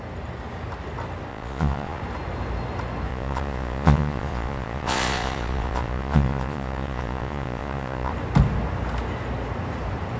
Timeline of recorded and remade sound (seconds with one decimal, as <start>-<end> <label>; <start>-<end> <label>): 0.0-1.3 recorded; 1.3-2.0 remade; 2.0-3.1 recorded; 3.1-8.1 remade; 8.1-10.2 recorded